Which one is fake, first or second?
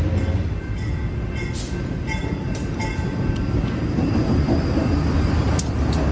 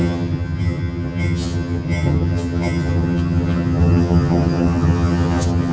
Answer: second